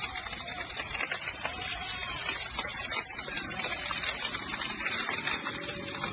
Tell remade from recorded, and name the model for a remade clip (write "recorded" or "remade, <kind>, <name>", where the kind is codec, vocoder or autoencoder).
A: remade, vocoder, BigVGAN v2